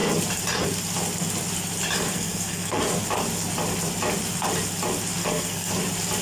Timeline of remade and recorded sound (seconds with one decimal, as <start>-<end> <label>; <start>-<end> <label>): 0.0-2.1 recorded; 2.1-2.8 remade; 2.8-5.2 recorded; 5.2-5.7 remade; 5.7-6.2 recorded